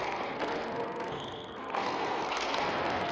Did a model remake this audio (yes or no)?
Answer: yes